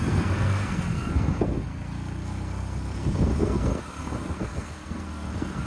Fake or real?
fake